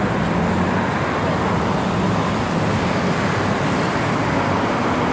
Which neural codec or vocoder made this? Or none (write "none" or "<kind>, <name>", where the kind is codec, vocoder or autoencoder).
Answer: none